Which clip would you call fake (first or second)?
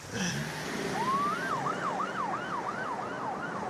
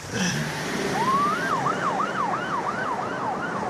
second